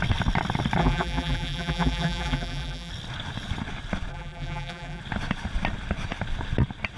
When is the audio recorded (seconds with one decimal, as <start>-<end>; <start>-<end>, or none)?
0.0-0.8; 2.9-4.1; 5.0-7.0